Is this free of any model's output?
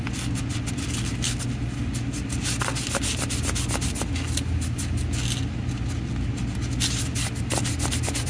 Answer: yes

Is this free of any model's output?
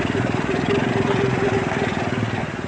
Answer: yes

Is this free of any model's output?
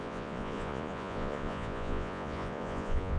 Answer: no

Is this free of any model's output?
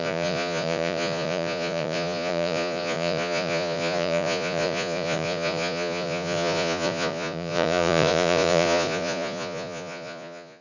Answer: no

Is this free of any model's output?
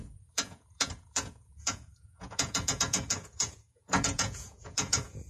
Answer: no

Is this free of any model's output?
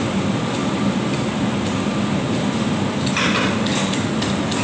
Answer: yes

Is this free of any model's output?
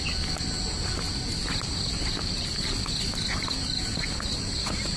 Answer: yes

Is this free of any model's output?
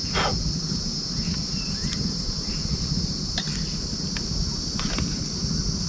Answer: yes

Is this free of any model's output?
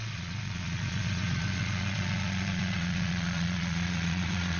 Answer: no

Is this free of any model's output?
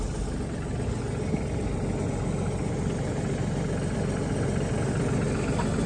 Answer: yes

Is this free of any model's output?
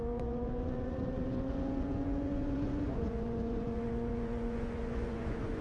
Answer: no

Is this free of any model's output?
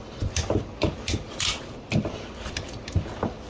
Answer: yes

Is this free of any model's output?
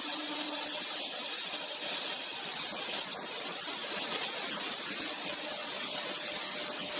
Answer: yes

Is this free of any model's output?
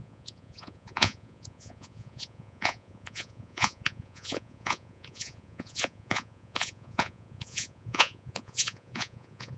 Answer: no